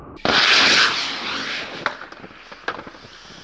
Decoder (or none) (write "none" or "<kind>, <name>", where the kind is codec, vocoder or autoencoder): none